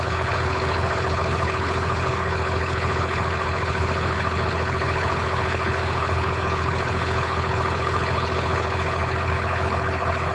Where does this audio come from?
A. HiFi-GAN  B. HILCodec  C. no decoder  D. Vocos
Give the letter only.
B